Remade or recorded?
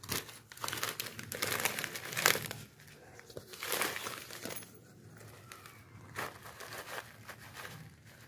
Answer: recorded